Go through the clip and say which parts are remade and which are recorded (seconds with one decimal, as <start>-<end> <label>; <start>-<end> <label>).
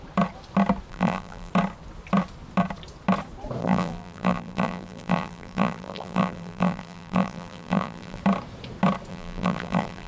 0.0-0.9 recorded; 0.9-1.5 remade; 1.5-3.6 recorded; 3.6-8.2 remade; 8.2-9.1 recorded; 9.1-10.1 remade